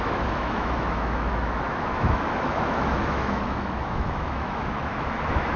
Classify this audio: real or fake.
fake